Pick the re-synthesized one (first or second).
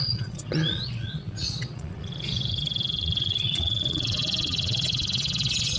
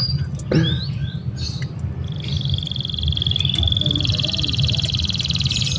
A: first